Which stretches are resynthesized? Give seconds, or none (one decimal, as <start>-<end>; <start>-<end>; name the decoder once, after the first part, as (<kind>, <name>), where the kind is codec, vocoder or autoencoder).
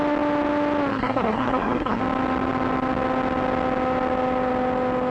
0.9-2.0 (codec, SNAC)